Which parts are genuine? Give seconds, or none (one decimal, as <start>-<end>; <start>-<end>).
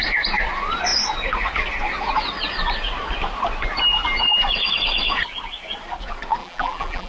0.0-6.4